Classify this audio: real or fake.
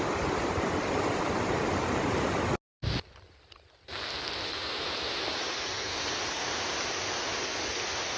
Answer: real